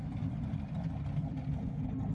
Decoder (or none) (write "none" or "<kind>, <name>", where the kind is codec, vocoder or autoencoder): vocoder, BigVGAN v2